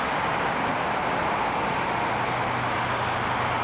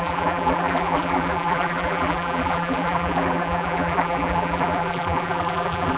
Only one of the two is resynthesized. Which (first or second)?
second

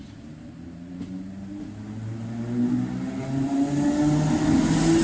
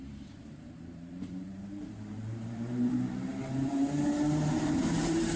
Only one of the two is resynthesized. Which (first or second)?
second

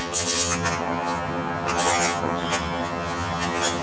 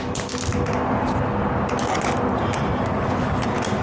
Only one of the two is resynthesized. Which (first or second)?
first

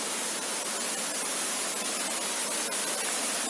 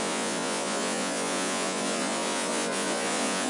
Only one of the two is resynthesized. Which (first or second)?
second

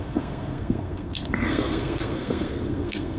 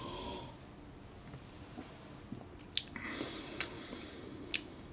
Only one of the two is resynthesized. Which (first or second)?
first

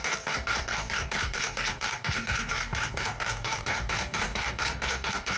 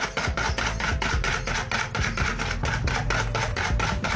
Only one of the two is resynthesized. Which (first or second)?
first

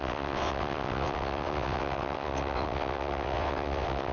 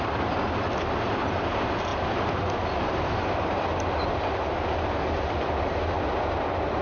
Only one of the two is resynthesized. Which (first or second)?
first